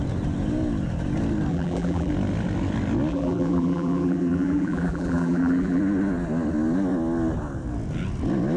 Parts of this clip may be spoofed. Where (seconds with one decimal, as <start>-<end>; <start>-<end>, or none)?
1.5-2.1; 3.1-5.8

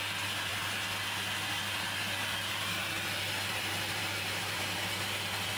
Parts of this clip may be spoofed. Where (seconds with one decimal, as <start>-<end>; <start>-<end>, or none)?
4.0-4.6

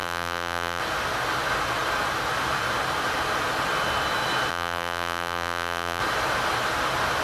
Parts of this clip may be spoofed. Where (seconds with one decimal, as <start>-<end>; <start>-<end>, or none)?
0.0-0.8; 4.5-6.0